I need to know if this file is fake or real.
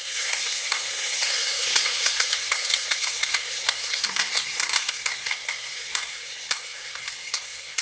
fake